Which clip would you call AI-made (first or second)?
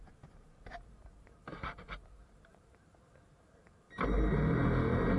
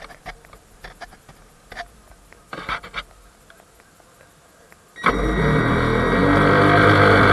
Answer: first